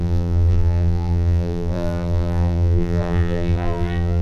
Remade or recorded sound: remade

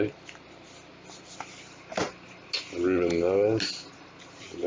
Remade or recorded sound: recorded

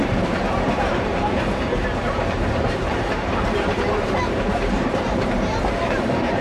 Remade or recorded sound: remade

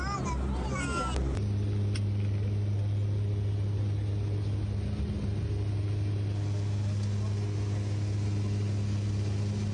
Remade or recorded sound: recorded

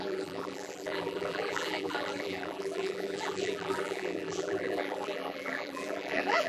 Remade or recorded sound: remade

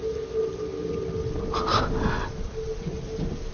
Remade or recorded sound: recorded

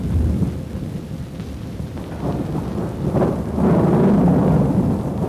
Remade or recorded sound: recorded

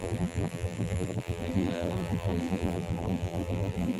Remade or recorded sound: remade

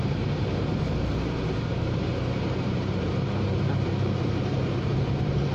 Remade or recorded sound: remade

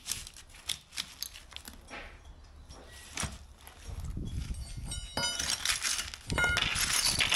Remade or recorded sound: recorded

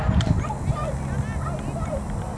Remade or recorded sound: recorded